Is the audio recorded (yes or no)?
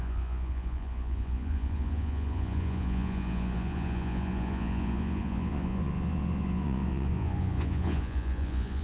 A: no